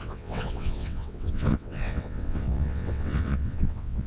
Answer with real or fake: fake